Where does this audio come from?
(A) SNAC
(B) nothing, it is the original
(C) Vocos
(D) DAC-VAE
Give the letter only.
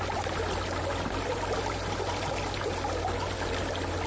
B